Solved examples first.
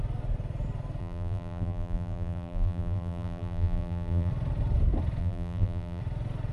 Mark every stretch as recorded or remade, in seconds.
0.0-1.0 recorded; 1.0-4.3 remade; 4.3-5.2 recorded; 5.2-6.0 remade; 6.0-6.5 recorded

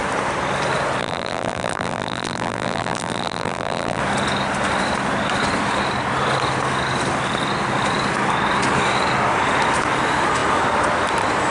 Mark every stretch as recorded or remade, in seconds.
0.0-1.0 recorded; 1.0-4.0 remade; 4.0-11.5 recorded

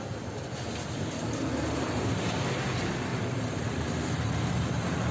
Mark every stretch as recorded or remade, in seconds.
0.0-3.1 recorded; 3.1-5.1 remade

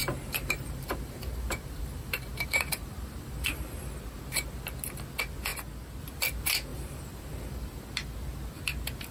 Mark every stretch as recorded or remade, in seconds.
0.0-3.9 remade; 3.9-6.7 recorded; 6.7-7.8 remade; 7.8-9.1 recorded

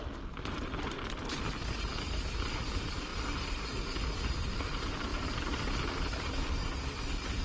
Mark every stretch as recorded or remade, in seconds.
0.0-7.4 recorded

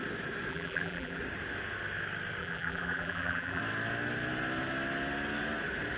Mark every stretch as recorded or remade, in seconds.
0.0-0.5 recorded; 0.5-1.2 remade; 1.2-2.4 recorded; 2.4-3.6 remade; 3.6-6.0 recorded

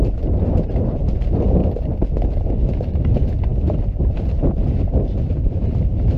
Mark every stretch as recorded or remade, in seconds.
0.0-1.6 remade; 1.6-3.0 recorded; 3.0-6.2 remade

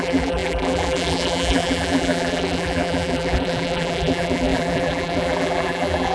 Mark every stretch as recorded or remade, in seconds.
0.0-6.1 remade